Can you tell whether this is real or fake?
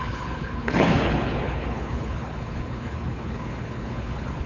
fake